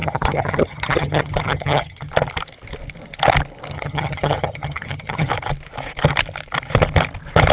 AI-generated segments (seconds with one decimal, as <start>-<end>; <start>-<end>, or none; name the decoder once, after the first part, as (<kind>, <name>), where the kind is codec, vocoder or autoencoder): 0.0-2.1 (vocoder, HiFi-GAN); 3.7-5.3